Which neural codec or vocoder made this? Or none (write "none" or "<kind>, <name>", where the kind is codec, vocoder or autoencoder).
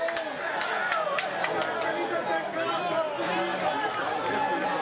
none